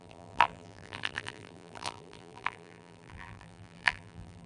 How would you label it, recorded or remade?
remade